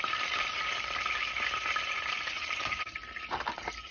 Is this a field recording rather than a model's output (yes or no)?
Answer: no